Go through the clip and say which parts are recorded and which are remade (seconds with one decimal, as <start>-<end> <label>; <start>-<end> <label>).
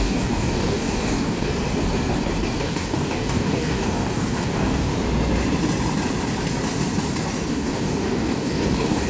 0.0-1.5 remade; 1.5-2.6 recorded; 2.6-4.9 remade; 4.9-7.5 recorded; 7.5-9.1 remade